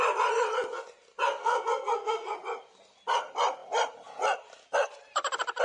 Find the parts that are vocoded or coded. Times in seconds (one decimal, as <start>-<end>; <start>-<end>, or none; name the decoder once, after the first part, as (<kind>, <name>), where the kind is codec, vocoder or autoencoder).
1.4-2.3 (codec, SNAC)